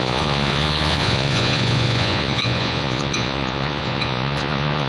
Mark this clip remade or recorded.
remade